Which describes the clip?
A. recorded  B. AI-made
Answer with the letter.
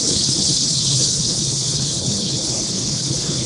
B